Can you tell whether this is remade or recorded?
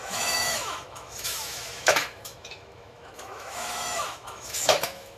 remade